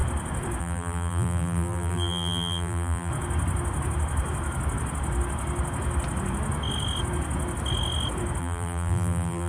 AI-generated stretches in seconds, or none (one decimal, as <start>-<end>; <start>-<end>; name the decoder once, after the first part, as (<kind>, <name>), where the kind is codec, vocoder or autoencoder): 0.6-3.1 (vocoder, BigVGAN v2); 8.4-9.5